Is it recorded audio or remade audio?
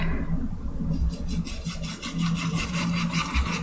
recorded